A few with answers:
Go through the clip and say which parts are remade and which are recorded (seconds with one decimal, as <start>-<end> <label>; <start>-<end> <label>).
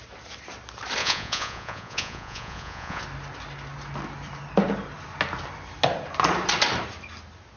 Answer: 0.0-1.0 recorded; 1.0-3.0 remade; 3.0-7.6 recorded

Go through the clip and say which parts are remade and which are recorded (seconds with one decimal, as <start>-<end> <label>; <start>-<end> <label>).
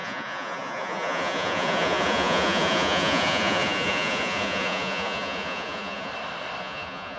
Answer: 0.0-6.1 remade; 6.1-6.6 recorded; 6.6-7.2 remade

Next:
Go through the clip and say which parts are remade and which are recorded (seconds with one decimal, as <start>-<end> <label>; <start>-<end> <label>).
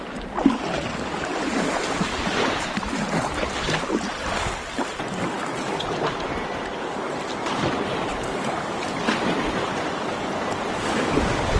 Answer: 0.0-11.6 recorded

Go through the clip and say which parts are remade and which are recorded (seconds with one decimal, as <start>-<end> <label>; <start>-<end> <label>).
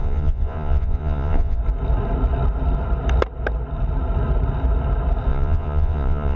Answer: 0.0-1.6 remade; 1.6-5.3 recorded; 5.3-6.4 remade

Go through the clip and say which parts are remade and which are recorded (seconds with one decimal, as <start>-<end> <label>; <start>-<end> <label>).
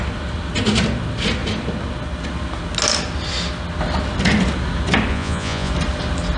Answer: 0.0-5.1 recorded; 5.1-5.7 remade; 5.7-6.4 recorded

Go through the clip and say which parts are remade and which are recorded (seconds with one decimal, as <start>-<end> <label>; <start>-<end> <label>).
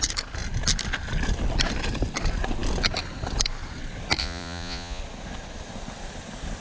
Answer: 0.0-4.2 recorded; 4.2-5.0 remade; 5.0-6.6 recorded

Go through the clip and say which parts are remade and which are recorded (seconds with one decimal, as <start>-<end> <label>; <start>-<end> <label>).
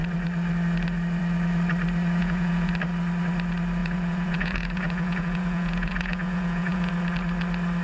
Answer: 0.0-2.2 recorded; 2.2-2.7 remade; 2.7-3.8 recorded; 3.8-6.9 remade; 6.9-7.8 recorded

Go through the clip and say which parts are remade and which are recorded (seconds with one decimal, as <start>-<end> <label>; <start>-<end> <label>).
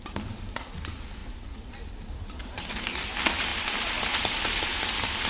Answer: 0.0-5.3 recorded